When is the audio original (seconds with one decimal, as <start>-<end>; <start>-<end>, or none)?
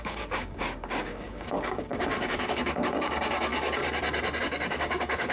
3.5-4.4